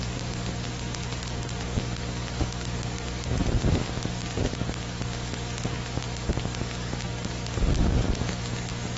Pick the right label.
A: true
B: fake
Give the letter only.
B